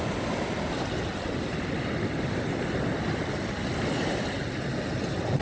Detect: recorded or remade recorded